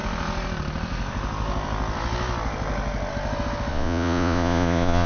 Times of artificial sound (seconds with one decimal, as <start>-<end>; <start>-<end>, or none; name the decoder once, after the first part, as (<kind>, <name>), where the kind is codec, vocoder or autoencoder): 3.7-5.1 (vocoder, Vocos)